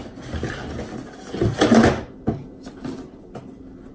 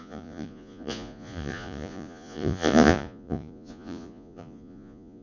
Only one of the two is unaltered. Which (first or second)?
first